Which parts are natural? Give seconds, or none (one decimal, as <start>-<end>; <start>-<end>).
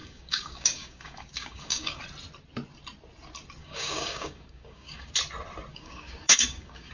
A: 2.0-3.6; 5.1-5.7